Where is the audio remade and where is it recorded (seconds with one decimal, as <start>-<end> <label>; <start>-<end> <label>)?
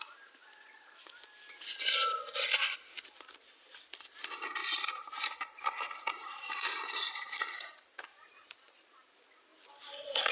0.0-4.6 recorded; 4.6-9.0 remade; 9.0-10.3 recorded